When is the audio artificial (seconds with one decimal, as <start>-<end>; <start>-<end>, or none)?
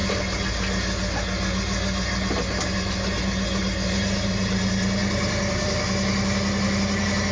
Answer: none